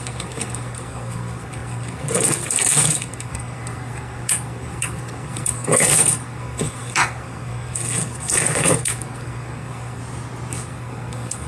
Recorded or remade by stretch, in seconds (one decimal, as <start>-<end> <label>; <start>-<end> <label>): 0.0-10.0 remade; 10.0-10.5 recorded; 10.5-11.5 remade

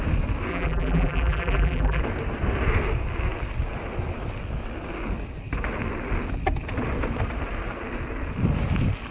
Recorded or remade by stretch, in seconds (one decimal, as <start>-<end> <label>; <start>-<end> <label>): 0.0-0.5 recorded; 0.5-2.0 remade; 2.0-9.1 recorded

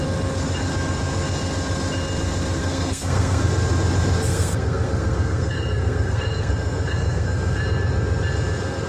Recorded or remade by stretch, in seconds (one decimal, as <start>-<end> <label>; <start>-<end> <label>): 0.0-2.6 recorded; 2.6-3.4 remade; 3.4-4.3 recorded; 4.3-7.6 remade; 7.6-8.9 recorded